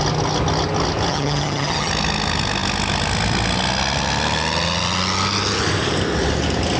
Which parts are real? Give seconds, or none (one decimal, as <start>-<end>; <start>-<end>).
0.0-1.1; 1.9-6.8

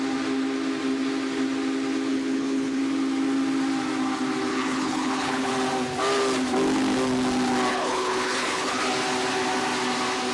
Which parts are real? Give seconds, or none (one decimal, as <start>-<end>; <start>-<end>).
0.0-2.1; 2.8-4.5; 5.5-7.7; 8.8-10.3

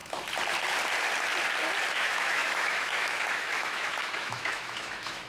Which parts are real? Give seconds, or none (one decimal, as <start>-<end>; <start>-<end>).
0.0-1.9

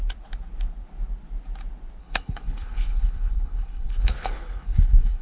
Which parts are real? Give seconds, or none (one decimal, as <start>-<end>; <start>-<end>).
0.0-2.0